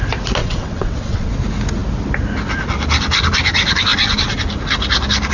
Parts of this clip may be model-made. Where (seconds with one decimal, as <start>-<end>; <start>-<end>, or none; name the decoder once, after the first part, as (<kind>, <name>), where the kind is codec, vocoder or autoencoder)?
0.4-1.3 (vocoder, WaveNeXt)